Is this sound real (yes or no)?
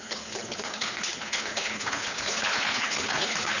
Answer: no